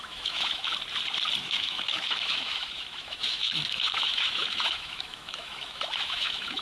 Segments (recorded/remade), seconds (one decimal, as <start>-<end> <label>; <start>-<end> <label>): 0.0-0.7 remade; 0.7-1.4 recorded; 1.4-6.6 remade